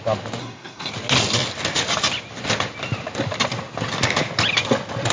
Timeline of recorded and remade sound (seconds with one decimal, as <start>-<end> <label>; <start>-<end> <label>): 0.0-0.4 recorded; 0.4-0.9 remade; 0.9-5.1 recorded